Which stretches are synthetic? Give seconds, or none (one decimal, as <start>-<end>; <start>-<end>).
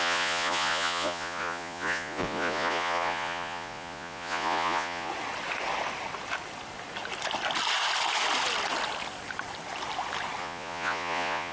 0.0-5.1; 10.4-11.5